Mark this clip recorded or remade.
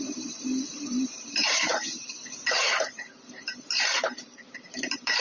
remade